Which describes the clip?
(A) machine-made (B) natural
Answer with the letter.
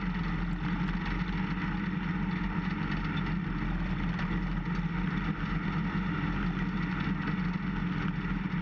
B